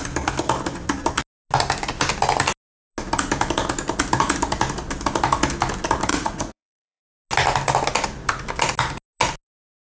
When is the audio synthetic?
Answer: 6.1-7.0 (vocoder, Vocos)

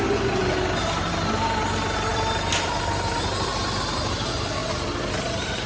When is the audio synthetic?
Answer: 2.1-2.8 (vocoder, BigVGAN v2)

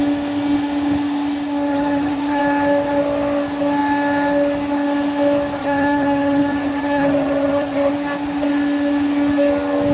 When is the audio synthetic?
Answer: 1.7-2.4 (vocoder, HiFi-GAN); 5.6-7.9

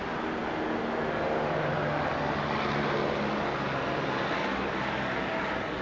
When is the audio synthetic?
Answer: 4.5-5.8 (codec, DAC)

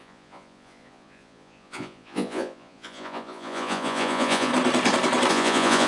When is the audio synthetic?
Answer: 0.0-4.5 (vocoder, Vocos); 5.3-5.9

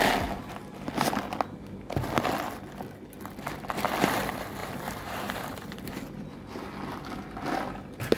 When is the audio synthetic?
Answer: 4.6-5.9 (vocoder, BigVGAN v2)

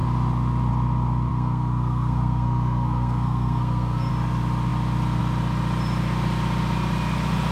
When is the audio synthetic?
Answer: 1.3-4.1 (codec, SNAC)

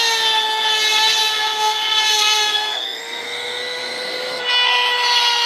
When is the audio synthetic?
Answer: 1.2-4.5 (codec, SNAC)